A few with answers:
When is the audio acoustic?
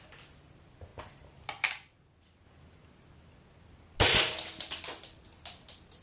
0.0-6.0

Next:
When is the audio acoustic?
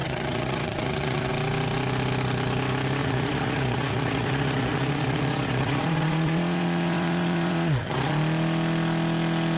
1.3-3.0; 8.1-9.6